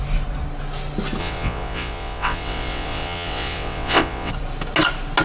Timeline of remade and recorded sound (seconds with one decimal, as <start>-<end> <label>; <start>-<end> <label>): 0.0-1.2 recorded; 1.2-4.3 remade; 4.3-5.2 recorded